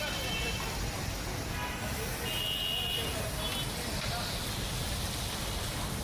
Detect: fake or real real